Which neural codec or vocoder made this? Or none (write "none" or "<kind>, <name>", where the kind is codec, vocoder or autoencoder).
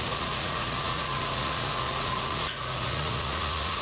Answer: vocoder, Vocos